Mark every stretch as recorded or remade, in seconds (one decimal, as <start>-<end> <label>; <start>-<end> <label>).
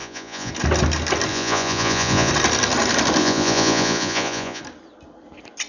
0.0-0.5 remade; 0.5-1.3 recorded; 1.3-2.3 remade; 2.3-3.2 recorded; 3.2-4.6 remade; 4.6-5.7 recorded